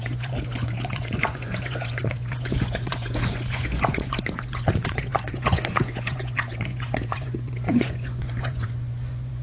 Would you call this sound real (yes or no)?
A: no